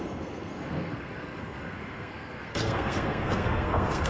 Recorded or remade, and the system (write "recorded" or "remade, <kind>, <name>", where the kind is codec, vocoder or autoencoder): remade, codec, SNAC